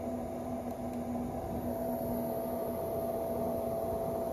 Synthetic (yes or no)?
no